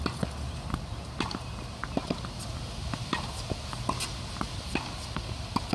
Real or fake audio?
real